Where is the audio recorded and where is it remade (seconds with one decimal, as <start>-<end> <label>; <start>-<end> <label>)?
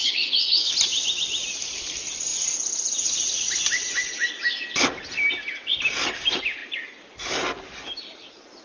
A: 0.0-0.7 remade; 0.7-8.6 recorded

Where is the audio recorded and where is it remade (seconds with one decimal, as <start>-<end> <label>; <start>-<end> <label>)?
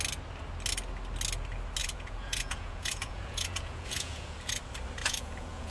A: 0.0-1.8 recorded; 1.8-4.6 remade; 4.6-5.0 recorded; 5.0-5.7 remade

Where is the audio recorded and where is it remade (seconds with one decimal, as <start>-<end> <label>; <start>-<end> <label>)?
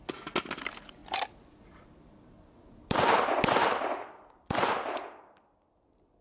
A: 0.0-1.0 recorded; 1.0-4.7 remade; 4.7-6.2 recorded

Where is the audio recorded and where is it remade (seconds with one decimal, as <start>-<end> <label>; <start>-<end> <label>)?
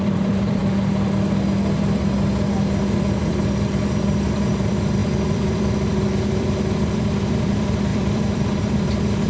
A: 0.0-0.6 remade; 0.6-3.2 recorded; 3.2-9.3 remade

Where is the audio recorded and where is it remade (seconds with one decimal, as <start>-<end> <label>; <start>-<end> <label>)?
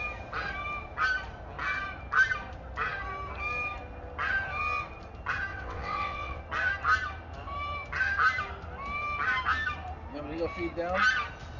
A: 0.0-5.5 recorded; 5.5-6.4 remade; 6.4-11.6 recorded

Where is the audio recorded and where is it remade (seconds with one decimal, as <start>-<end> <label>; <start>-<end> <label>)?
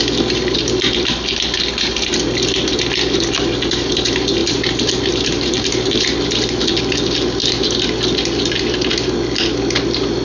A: 0.0-4.4 recorded; 4.4-6.0 remade; 6.0-10.2 recorded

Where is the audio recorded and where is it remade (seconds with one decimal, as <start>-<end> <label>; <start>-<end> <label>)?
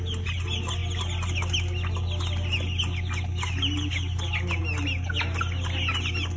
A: 0.0-6.4 recorded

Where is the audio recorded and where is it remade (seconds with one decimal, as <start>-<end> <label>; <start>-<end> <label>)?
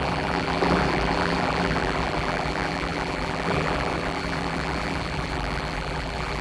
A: 0.0-6.4 remade